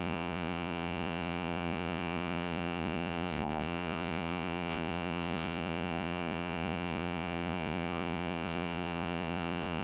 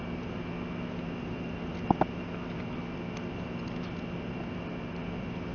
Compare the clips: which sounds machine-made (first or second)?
first